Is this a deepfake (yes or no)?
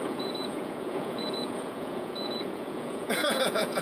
yes